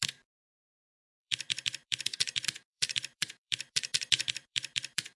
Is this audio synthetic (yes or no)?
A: yes